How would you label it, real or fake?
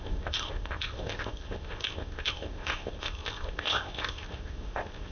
fake